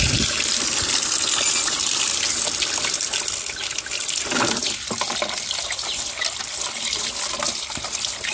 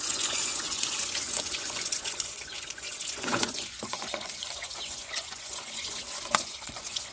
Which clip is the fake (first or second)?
second